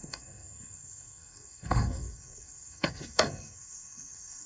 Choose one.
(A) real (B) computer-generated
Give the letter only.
B